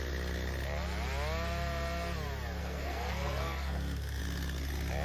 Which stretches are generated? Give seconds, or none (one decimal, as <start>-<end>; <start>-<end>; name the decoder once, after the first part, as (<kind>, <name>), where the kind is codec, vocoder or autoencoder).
2.6-4.2 (codec, SNAC)